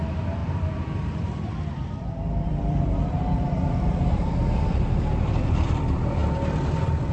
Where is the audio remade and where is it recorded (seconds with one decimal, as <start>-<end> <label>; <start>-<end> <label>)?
0.0-6.2 remade; 6.2-7.1 recorded